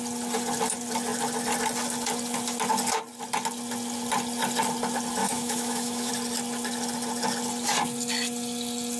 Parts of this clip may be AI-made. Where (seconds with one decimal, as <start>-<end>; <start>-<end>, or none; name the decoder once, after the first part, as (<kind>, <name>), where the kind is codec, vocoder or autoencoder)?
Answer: 5.2-6.1 (autoencoder, DAC-VAE)